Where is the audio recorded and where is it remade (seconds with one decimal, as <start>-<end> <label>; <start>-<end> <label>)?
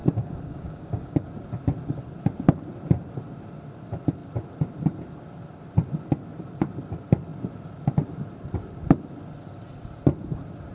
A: 0.0-1.3 remade; 1.3-10.7 recorded